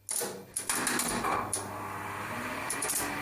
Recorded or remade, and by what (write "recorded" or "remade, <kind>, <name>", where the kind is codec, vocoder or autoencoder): recorded